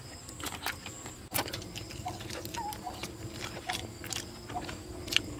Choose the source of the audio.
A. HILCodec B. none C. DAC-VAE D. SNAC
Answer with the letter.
B